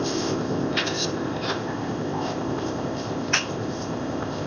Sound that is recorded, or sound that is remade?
remade